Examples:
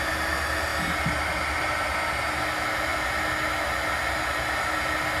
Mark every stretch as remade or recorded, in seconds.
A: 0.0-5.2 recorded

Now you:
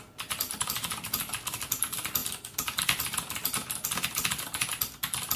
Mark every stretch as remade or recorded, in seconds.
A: 0.0-2.2 recorded; 2.2-3.0 remade; 3.0-5.4 recorded

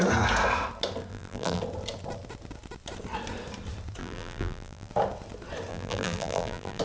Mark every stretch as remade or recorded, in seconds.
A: 0.0-1.1 recorded; 1.1-1.6 remade; 1.6-4.0 recorded; 4.0-4.9 remade; 4.9-5.7 recorded; 5.7-6.8 remade